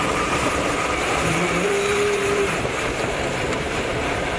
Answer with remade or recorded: remade